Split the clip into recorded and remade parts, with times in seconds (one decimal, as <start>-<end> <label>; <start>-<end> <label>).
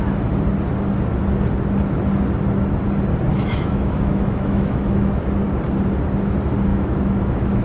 0.0-3.3 recorded; 3.3-5.2 remade; 5.2-6.7 recorded; 6.7-7.6 remade